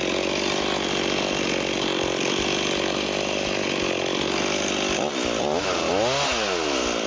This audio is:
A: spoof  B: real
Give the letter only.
B